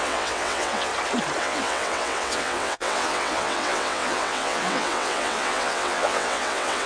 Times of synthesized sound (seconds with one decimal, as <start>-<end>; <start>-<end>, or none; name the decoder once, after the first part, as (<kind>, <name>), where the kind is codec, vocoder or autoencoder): 0.0-0.9 (vocoder, WaveNeXt); 1.4-6.9